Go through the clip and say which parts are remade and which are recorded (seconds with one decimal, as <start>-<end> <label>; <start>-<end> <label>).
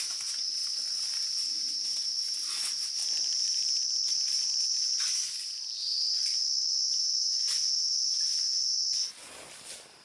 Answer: 0.0-3.0 recorded; 3.0-7.7 remade; 7.7-10.0 recorded